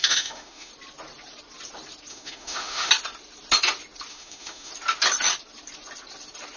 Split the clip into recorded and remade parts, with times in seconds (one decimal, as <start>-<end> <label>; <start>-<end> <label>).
0.0-0.7 remade; 0.7-2.1 recorded; 2.1-2.9 remade; 2.9-4.1 recorded; 4.1-4.7 remade; 4.7-6.6 recorded